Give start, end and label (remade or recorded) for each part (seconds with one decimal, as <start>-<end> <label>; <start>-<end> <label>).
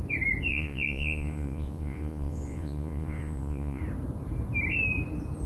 0.0-0.5 recorded; 0.5-3.8 remade; 3.8-5.5 recorded